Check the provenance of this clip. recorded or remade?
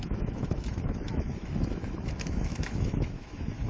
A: remade